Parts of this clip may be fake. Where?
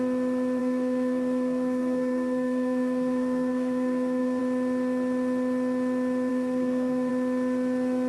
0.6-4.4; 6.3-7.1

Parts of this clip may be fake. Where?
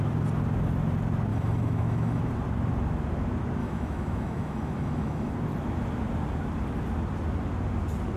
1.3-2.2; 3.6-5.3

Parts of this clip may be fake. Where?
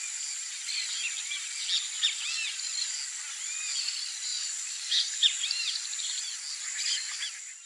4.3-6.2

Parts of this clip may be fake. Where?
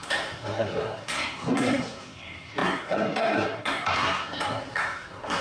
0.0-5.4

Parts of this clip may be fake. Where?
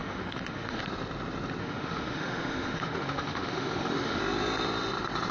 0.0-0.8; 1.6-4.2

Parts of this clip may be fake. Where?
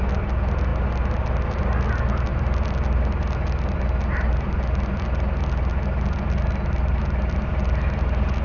none